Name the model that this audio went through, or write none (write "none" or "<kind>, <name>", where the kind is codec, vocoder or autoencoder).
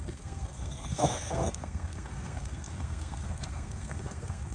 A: codec, SNAC